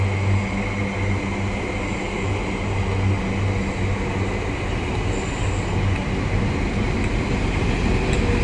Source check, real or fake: real